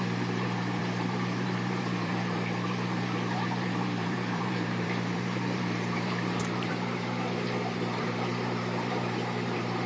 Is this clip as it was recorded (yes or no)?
no